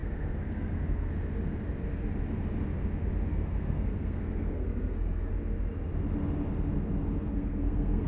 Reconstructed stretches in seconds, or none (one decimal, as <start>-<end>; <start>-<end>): 0.0-1.1; 3.3-5.3; 7.3-8.1

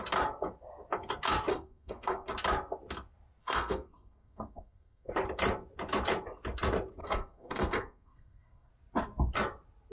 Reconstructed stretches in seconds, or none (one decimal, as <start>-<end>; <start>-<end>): 1.5-2.3; 3.4-5.1; 7.0-8.7

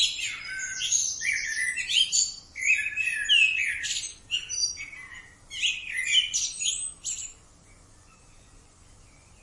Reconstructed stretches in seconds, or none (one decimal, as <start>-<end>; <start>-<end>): 0.6-2.0; 7.3-9.4

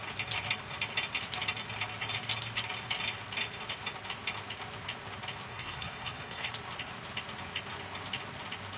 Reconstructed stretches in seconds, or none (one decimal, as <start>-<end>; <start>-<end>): 5.5-6.5

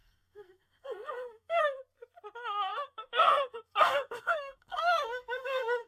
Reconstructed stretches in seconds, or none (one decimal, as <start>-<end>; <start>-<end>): 0.0-1.6; 2.7-5.9